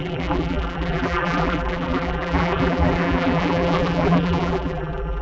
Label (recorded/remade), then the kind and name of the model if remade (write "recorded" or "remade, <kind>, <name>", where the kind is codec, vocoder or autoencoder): remade, vocoder, BigVGAN v2